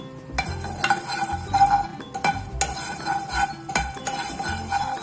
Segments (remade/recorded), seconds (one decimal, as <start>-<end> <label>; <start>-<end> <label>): 0.0-5.0 recorded

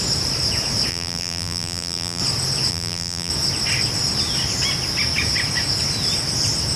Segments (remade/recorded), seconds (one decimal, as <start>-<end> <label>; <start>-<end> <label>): 0.0-0.9 recorded; 0.9-2.2 remade; 2.2-2.7 recorded; 2.7-3.3 remade; 3.3-6.8 recorded

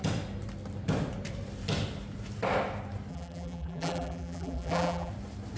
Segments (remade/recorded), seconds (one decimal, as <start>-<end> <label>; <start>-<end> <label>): 0.0-3.1 recorded; 3.1-5.1 remade; 5.1-5.6 recorded

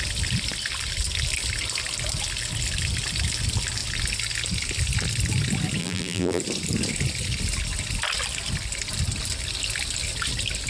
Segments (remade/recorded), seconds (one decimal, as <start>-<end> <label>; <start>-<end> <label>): 0.0-5.8 recorded; 5.8-6.4 remade; 6.4-10.7 recorded

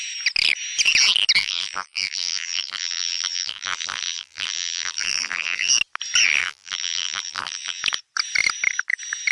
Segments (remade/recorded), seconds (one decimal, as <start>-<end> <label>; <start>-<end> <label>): 0.0-1.4 recorded; 1.4-5.7 remade; 5.7-6.4 recorded; 6.4-7.8 remade; 7.8-9.3 recorded

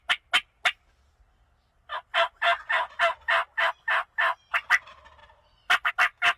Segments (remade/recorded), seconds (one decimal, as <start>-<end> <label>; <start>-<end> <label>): 0.0-5.2 recorded; 5.2-5.9 remade; 5.9-6.4 recorded